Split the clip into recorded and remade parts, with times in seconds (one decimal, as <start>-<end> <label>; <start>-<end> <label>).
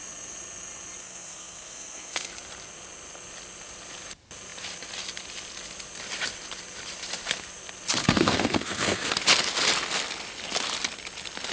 0.0-1.0 recorded; 1.0-2.3 remade; 2.3-8.0 recorded; 8.0-9.1 remade; 9.1-11.5 recorded